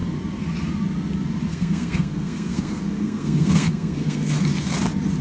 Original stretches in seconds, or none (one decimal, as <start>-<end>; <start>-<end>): 0.0-1.5; 4.5-5.2